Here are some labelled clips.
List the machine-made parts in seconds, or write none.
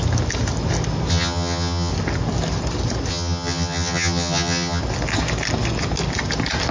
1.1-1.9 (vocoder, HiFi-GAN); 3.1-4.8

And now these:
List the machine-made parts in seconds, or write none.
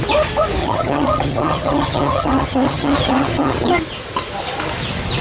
0.6-3.7 (vocoder, HiFi-GAN)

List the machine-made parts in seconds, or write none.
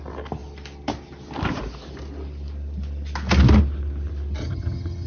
4.4-5.1 (vocoder, HiFi-GAN)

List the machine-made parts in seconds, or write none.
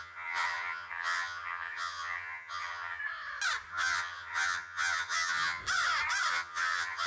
0.0-3.0 (vocoder, HiFi-GAN); 3.7-5.6; 6.3-7.1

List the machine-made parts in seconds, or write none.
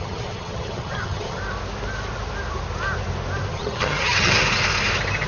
0.0-1.4 (vocoder, HiFi-GAN); 3.5-4.3